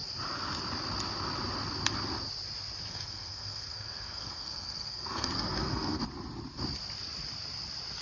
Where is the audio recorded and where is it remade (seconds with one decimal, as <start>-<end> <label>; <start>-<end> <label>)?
0.0-2.9 recorded; 2.9-6.0 remade; 6.0-8.0 recorded